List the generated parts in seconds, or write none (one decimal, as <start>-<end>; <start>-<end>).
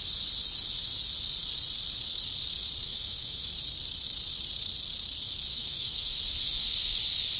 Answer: 2.8-3.5; 5.5-6.2